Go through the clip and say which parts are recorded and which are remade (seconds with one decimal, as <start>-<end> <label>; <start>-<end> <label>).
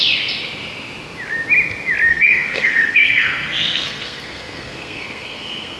0.0-2.1 recorded; 2.1-5.8 remade